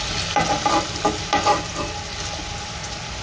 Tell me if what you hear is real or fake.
real